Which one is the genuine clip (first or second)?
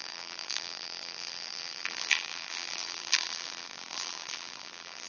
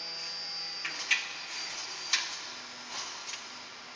second